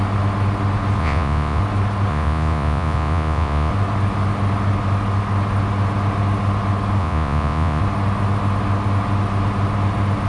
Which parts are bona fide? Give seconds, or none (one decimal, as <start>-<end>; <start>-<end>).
0.0-1.0; 1.6-2.1; 3.7-7.0; 7.8-10.3